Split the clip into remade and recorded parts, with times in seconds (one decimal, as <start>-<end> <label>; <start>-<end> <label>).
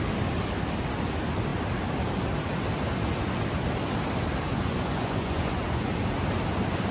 0.0-4.5 recorded; 4.5-5.9 remade; 5.9-6.9 recorded